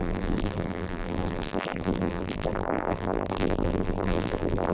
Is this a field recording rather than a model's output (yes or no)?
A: no